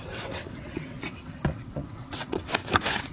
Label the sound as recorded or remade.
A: remade